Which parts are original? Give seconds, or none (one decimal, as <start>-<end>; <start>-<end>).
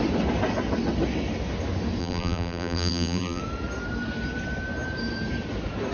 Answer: 0.0-2.0; 3.4-5.9